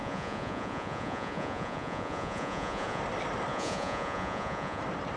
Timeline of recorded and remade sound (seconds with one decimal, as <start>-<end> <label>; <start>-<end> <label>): 0.0-3.0 remade; 3.0-3.5 recorded; 3.5-4.8 remade; 4.8-5.2 recorded